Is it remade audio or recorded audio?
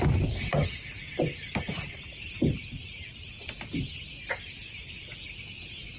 recorded